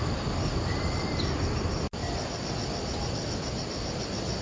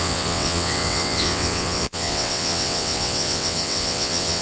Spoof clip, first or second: second